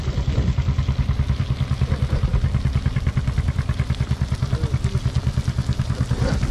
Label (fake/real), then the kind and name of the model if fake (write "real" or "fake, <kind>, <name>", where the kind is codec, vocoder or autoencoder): real